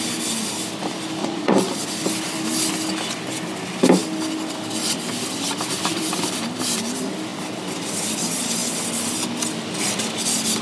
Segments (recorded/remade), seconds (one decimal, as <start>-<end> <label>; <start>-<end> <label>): 0.0-1.2 recorded; 1.2-1.8 remade; 1.8-10.6 recorded